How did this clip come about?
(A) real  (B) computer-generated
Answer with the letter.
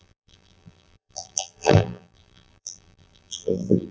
B